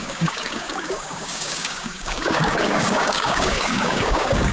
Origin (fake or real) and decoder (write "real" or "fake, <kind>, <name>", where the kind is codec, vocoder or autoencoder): fake, codec, DAC